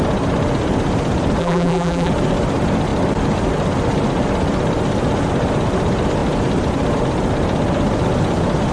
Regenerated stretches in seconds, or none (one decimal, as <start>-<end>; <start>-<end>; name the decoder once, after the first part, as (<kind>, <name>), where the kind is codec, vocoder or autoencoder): 1.4-2.1 (vocoder, BigVGAN v2)